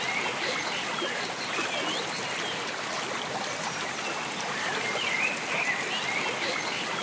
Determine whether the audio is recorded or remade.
recorded